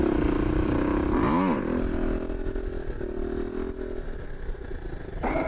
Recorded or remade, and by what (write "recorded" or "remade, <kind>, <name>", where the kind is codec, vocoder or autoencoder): recorded